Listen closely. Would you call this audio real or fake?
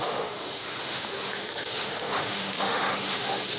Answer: fake